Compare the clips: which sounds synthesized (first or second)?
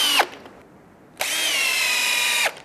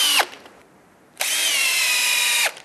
second